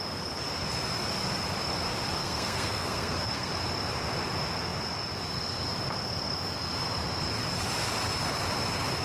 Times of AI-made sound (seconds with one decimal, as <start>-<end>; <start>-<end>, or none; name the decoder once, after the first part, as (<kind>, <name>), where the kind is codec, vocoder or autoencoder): 2.2-3.5 (codec, SNAC)